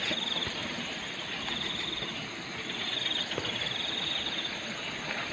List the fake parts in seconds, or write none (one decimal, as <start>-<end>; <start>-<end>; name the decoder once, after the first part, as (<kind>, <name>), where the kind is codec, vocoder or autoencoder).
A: 0.6-3.3 (vocoder, BigVGAN v2)